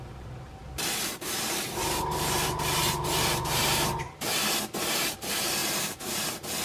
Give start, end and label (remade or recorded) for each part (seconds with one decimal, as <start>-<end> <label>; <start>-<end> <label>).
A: 0.0-6.6 remade